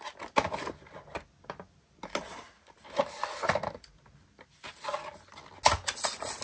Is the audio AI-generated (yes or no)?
no